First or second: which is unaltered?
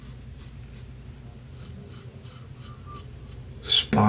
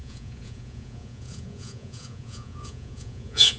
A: first